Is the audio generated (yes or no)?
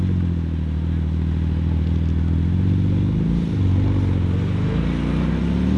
no